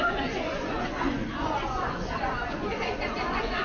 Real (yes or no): no